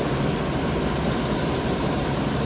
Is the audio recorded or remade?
recorded